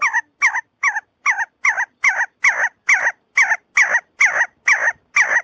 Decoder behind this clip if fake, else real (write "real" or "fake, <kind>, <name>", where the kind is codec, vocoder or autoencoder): real